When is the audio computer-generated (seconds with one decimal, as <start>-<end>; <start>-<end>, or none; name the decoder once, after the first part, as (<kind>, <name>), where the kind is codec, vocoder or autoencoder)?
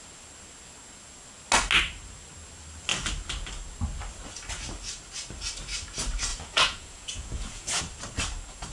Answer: 6.3-7.8 (vocoder, Vocos)